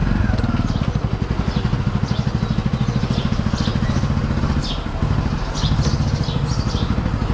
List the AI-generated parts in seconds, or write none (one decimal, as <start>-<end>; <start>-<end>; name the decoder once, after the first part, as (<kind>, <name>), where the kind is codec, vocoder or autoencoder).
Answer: none